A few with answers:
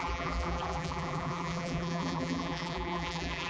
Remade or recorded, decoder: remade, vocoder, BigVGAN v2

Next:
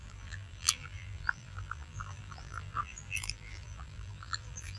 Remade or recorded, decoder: remade, vocoder, BigVGAN v2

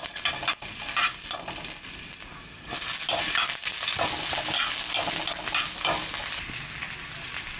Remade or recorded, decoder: recorded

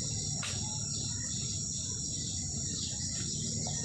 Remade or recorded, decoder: recorded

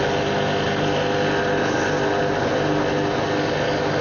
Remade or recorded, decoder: recorded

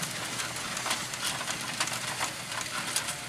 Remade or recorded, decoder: remade, vocoder, BigVGAN v2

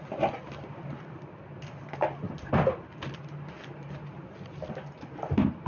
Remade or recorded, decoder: remade, vocoder, BigVGAN v2